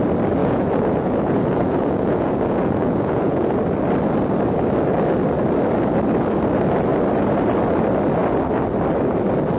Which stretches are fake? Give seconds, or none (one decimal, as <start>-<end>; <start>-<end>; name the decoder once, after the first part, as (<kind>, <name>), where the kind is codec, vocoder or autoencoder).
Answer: 0.4-3.5 (vocoder, Vocos)